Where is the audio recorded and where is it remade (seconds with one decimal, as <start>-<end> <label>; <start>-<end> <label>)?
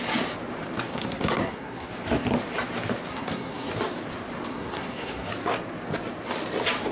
0.0-0.9 recorded; 0.9-1.9 remade; 1.9-3.1 recorded; 3.1-3.7 remade; 3.7-4.5 recorded; 4.5-5.3 remade; 5.3-6.9 recorded